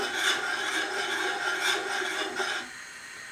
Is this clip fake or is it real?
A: real